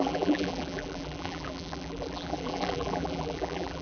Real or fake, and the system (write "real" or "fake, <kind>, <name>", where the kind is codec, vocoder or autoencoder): fake, vocoder, BigVGAN v2